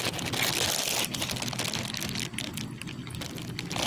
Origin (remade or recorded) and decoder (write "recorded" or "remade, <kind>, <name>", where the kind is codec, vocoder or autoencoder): recorded